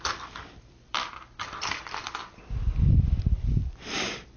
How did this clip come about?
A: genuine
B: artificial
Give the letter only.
B